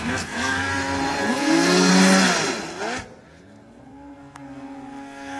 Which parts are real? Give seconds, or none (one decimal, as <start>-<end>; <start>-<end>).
0.7-1.3; 1.9-3.4